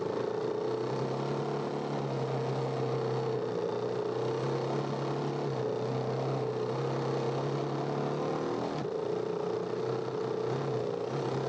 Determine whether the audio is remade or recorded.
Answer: recorded